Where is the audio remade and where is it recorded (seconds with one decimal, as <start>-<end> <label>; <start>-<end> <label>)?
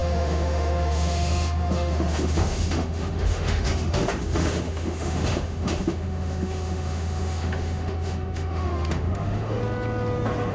0.0-9.6 remade; 9.6-10.5 recorded